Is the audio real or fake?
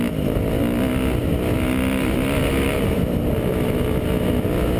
real